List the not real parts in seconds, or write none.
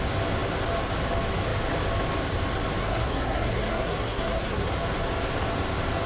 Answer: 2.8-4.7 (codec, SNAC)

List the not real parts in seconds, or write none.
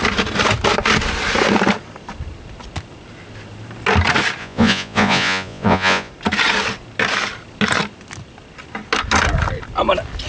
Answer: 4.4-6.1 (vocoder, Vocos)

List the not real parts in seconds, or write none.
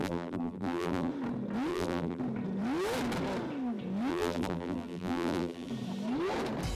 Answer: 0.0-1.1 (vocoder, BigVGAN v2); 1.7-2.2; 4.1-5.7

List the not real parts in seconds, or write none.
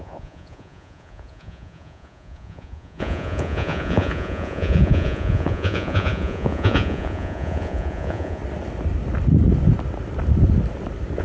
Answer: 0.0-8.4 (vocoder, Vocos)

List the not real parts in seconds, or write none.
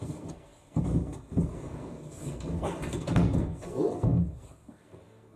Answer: 0.0-5.4 (codec, SNAC)